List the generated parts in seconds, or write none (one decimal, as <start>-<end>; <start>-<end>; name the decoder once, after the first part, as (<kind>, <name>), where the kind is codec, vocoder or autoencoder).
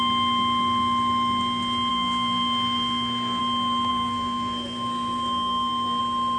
1.9-3.4 (codec, SNAC); 3.9-6.0